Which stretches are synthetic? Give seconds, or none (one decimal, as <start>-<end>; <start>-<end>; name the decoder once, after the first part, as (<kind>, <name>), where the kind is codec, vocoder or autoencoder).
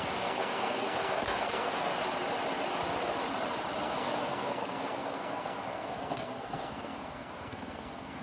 0.0-1.9 (codec, SNAC); 3.8-8.2